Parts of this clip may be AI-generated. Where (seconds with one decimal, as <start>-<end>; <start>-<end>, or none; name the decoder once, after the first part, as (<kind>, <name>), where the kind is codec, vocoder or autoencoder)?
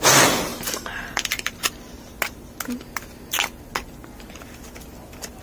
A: 0.5-1.9 (vocoder, BigVGAN v2)